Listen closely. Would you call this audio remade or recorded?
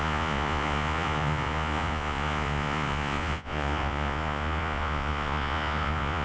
remade